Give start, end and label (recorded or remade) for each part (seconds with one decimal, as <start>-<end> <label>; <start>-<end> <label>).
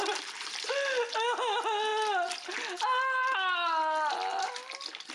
0.0-0.7 remade; 0.7-5.1 recorded